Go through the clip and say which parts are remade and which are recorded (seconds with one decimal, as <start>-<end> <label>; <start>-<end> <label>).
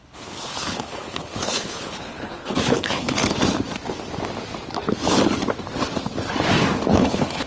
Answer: 0.0-3.2 remade; 3.2-6.9 recorded; 6.9-7.5 remade